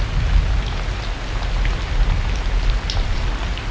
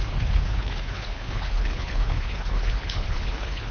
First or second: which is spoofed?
second